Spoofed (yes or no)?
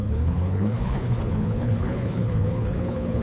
yes